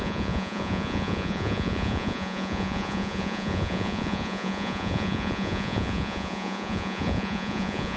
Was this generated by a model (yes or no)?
yes